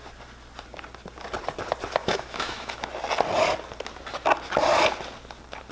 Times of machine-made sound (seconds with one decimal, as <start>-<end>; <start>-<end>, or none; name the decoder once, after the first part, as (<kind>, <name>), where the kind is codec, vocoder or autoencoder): 2.0-2.9 (autoencoder, DAC-VAE)